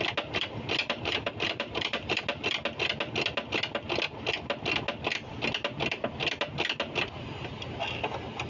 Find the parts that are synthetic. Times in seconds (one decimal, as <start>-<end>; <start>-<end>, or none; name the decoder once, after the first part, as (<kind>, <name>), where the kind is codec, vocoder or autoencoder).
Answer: 0.8-2.2 (vocoder, BigVGAN v2)